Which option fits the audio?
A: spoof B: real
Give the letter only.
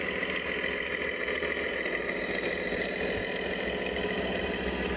B